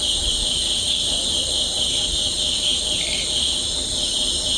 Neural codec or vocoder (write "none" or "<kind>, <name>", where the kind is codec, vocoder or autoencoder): none